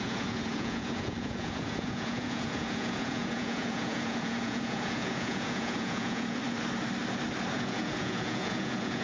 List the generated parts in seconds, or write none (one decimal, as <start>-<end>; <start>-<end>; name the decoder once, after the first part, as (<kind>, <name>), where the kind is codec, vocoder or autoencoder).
0.0-6.4 (vocoder, Vocos); 7.5-9.0